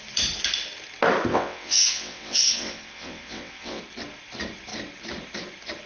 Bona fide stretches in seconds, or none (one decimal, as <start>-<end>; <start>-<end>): 0.0-1.3; 3.8-5.9